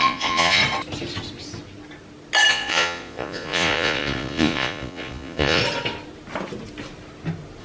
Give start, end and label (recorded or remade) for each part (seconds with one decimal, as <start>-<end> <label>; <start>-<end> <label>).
0.0-0.6 remade; 0.6-2.5 recorded; 2.5-5.6 remade; 5.6-7.6 recorded